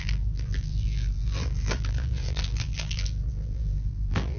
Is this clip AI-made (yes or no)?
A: yes